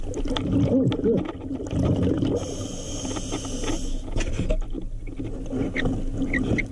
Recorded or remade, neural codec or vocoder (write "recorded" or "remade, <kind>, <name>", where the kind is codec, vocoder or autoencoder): recorded